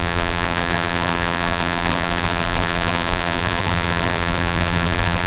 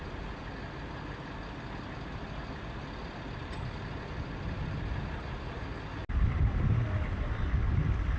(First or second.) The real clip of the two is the second